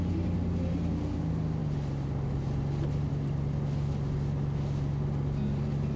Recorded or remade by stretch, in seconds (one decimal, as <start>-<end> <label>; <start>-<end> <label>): 0.0-6.0 recorded